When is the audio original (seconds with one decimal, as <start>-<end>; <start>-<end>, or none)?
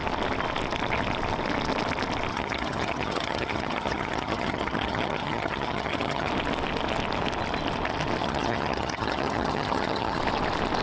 0.0-2.3; 6.3-8.2; 10.2-10.8